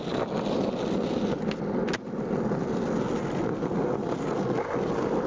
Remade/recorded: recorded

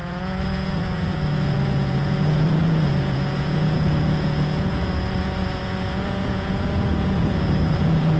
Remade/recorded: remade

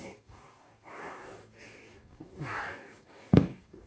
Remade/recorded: remade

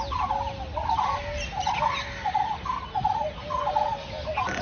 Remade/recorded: recorded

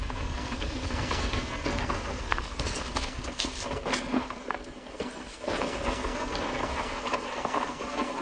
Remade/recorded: remade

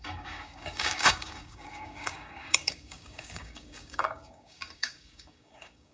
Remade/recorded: remade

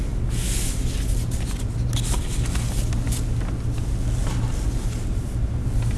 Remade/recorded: recorded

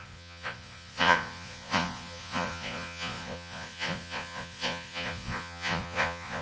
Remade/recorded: remade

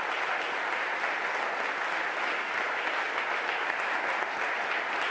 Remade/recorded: recorded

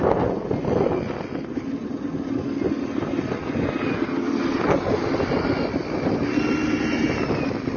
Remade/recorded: recorded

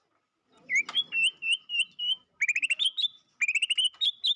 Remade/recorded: recorded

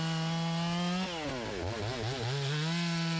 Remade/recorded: recorded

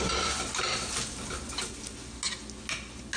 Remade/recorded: recorded